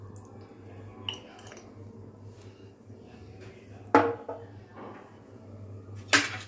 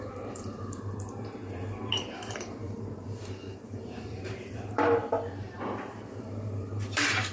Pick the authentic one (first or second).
first